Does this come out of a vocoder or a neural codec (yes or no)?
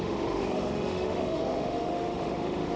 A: yes